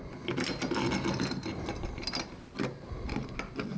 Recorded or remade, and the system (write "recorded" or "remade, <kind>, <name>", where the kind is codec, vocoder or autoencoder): recorded